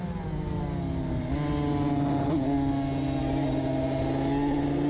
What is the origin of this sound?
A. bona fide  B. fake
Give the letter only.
A